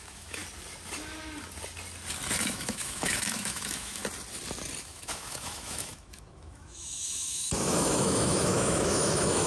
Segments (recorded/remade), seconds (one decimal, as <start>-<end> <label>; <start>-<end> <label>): 0.0-0.4 remade; 0.4-2.4 recorded; 2.4-4.0 remade; 4.0-4.8 recorded; 4.8-9.5 remade